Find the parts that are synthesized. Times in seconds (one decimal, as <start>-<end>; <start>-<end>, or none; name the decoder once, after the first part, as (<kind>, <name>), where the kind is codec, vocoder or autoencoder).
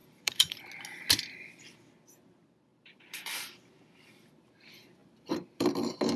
0.0-0.7 (vocoder, BigVGAN v2); 2.7-3.5; 5.0-5.7